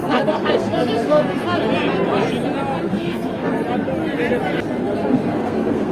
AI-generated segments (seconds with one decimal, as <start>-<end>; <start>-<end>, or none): 0.0-1.6; 2.9-3.5; 5.1-5.9